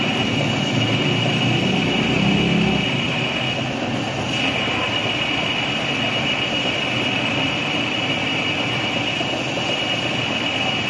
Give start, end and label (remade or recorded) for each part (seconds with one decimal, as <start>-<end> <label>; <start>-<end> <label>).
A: 0.0-10.9 recorded